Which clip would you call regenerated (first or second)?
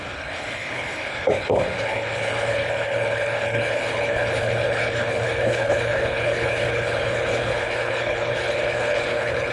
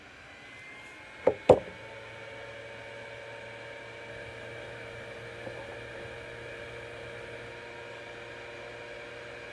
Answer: first